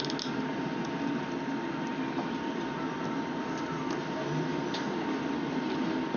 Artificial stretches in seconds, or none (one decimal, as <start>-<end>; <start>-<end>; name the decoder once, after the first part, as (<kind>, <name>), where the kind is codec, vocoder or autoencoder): none